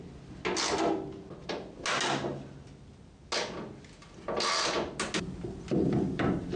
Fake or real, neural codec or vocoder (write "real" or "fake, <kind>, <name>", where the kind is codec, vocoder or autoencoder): real